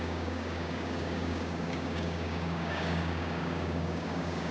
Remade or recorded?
remade